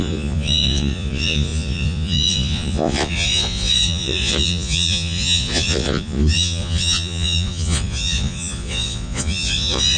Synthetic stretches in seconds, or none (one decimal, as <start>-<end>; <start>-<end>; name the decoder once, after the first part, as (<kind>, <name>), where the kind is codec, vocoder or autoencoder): 0.0-10.0 (vocoder, Vocos)